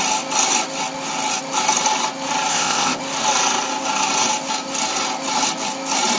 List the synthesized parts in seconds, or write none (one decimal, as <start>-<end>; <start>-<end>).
2.5-3.0